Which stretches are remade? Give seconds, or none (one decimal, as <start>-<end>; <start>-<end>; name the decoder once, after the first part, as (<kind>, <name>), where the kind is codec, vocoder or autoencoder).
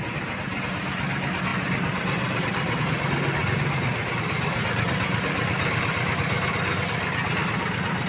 1.5-2.8 (vocoder, BigVGAN v2); 3.4-5.8